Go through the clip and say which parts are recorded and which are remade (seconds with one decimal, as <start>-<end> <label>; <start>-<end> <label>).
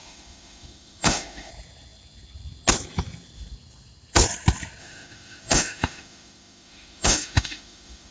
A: 0.0-1.5 remade; 1.5-4.8 recorded; 4.8-8.1 remade